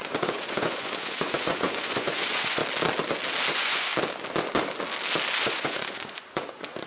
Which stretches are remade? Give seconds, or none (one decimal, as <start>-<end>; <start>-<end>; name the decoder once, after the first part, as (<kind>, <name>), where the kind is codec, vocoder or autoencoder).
0.0-2.6 (vocoder, Vocos); 3.5-3.9; 5.4-6.9

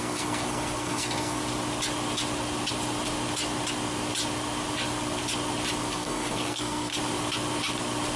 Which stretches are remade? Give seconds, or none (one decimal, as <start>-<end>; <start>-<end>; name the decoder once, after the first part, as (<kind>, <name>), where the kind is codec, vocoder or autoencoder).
0.0-1.4 (codec, SNAC); 5.9-6.9

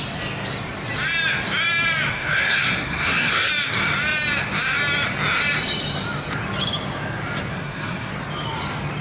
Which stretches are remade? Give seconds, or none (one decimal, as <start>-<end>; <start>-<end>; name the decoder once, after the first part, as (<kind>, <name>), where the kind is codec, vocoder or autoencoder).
2.1-3.5 (codec, SNAC); 7.5-8.1

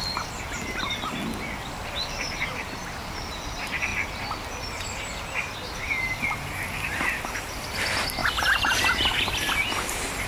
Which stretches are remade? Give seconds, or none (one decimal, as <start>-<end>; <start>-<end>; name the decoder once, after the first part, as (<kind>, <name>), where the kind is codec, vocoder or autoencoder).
8.2-8.8 (vocoder, BigVGAN v2)

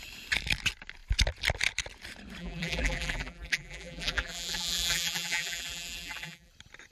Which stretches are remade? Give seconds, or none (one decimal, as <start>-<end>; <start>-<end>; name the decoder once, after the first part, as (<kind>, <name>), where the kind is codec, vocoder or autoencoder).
2.4-6.5 (vocoder, BigVGAN v2)

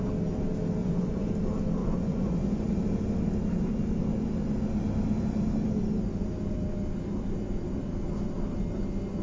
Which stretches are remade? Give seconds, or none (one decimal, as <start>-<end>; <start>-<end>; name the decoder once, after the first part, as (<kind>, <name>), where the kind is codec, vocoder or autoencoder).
0.8-1.3 (vocoder, Vocos); 1.8-2.7

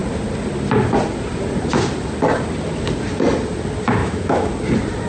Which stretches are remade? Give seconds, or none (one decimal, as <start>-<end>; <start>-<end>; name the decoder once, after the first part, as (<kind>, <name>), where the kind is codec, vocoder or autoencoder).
4.0-4.5 (autoencoder, DAC-VAE)